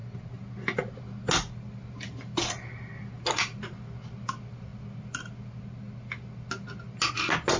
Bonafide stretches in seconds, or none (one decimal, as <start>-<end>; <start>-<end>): 0.0-7.6